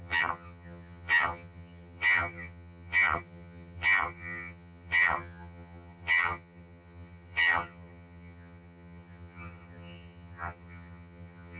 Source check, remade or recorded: remade